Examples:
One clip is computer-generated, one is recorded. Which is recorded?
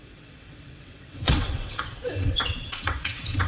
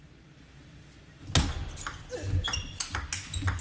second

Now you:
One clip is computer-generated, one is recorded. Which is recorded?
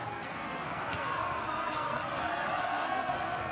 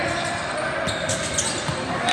second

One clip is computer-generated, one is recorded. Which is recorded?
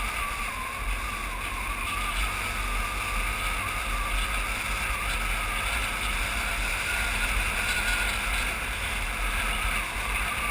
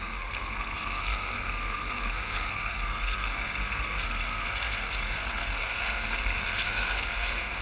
first